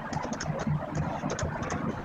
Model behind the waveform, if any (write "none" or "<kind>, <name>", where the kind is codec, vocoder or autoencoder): none